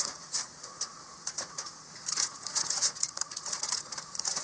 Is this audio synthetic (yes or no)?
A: yes